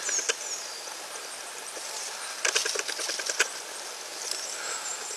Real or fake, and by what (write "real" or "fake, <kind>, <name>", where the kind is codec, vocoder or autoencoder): real